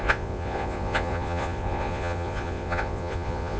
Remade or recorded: remade